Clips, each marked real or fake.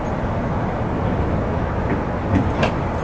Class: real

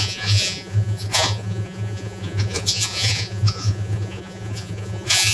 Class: fake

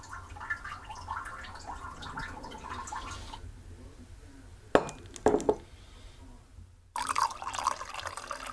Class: real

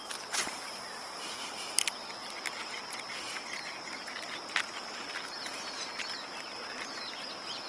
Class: real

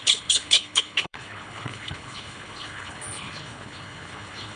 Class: fake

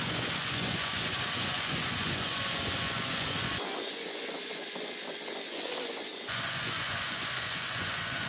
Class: fake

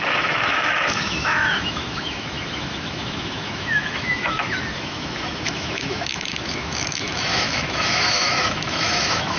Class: fake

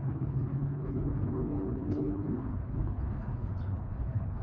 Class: fake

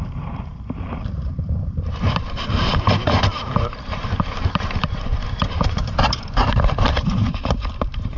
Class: fake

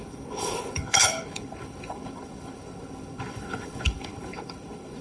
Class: fake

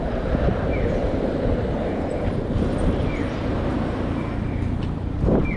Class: fake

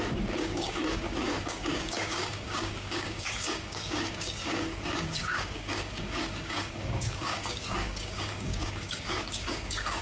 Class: fake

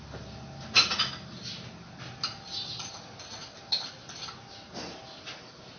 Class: real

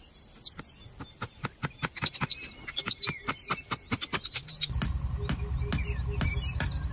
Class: real